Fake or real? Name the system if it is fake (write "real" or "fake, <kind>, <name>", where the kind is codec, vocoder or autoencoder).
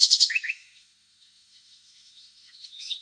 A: fake, autoencoder, DAC-VAE